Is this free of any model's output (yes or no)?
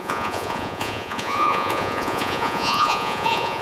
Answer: no